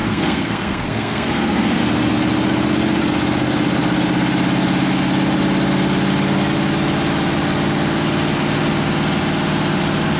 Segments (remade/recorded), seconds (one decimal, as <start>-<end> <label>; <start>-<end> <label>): 0.0-1.8 remade; 1.8-10.2 recorded